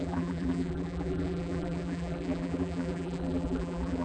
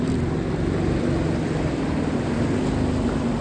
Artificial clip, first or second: first